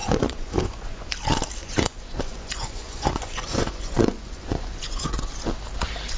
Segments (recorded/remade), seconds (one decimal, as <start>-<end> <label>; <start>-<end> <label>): 0.0-1.1 remade; 1.1-1.6 recorded; 1.6-5.3 remade; 5.3-6.2 recorded